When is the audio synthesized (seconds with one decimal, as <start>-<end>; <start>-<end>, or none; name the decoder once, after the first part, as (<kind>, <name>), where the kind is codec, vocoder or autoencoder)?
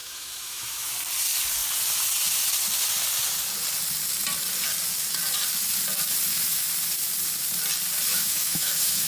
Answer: 0.0-0.9 (autoencoder, DAC-VAE); 8.1-9.1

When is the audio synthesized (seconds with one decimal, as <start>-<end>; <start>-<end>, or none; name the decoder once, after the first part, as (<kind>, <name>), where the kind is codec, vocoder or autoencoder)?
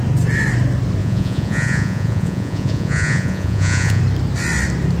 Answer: 1.0-4.0 (vocoder, Vocos)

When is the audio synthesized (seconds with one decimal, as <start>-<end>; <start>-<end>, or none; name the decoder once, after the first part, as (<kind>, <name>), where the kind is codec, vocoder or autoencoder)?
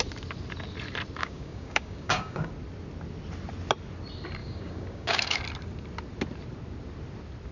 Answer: 1.2-2.5 (codec, DAC); 4.4-5.4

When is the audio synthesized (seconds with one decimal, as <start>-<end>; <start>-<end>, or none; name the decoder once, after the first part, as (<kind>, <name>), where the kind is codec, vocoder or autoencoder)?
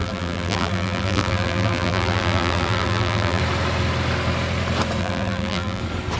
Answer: 0.0-3.4 (vocoder, BigVGAN v2); 5.0-5.8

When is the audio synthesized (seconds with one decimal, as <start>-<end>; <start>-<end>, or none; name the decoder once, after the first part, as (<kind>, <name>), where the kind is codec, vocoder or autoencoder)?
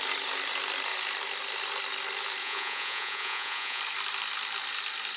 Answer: 2.4-3.8 (vocoder, Vocos)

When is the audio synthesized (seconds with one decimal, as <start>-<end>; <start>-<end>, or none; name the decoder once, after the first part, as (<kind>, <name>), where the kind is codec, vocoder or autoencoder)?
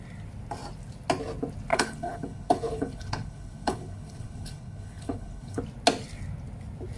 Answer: 1.7-5.6 (codec, HILCodec)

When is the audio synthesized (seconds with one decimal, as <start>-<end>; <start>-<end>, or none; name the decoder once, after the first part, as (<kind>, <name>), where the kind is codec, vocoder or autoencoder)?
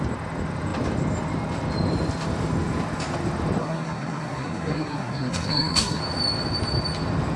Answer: 3.6-6.0 (codec, SNAC)